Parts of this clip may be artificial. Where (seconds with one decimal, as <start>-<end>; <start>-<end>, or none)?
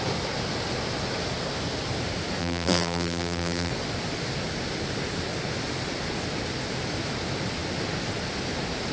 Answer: 2.4-3.7